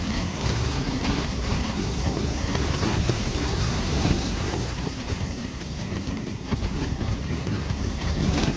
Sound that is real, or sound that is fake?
fake